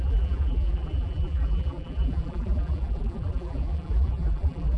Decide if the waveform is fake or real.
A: fake